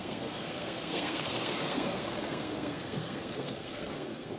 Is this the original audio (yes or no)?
no